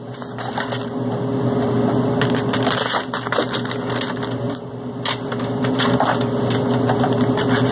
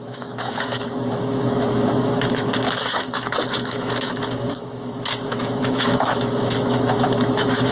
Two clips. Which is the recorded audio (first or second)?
first